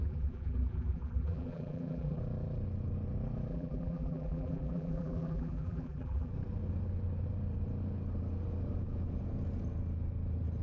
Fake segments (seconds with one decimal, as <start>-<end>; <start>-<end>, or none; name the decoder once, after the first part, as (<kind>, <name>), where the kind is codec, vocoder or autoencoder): 0.0-2.2 (vocoder, BigVGAN v2); 3.5-6.3